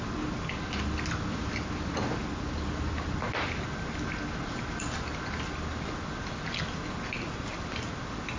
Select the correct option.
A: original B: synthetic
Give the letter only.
A